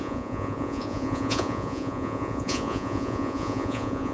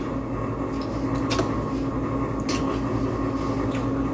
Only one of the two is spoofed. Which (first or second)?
first